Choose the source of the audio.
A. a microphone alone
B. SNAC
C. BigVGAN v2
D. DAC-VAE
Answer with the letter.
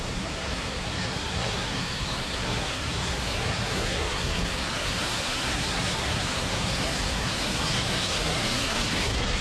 B